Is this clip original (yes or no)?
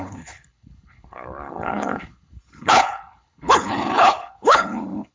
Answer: no